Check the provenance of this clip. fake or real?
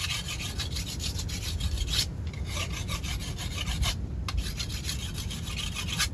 real